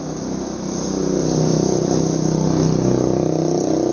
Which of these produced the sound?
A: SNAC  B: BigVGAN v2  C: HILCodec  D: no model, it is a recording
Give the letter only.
D